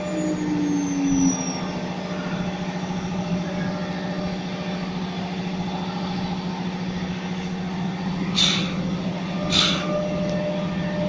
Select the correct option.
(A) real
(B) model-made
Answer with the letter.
A